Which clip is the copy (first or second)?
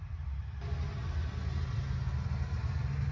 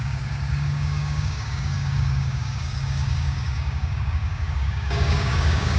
second